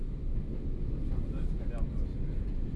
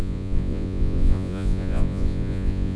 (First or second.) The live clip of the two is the first